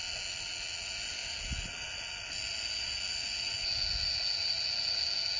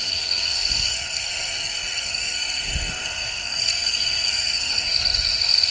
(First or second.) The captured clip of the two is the first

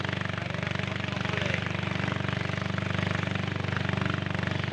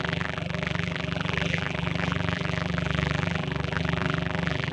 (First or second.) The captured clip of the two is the first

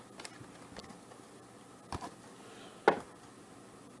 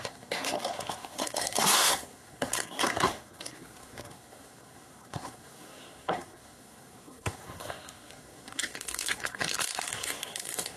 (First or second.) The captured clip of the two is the first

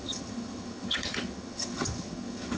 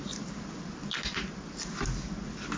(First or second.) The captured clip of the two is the second